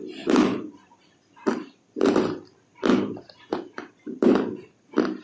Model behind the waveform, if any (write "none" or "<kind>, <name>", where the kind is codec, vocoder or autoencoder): vocoder, BigVGAN v2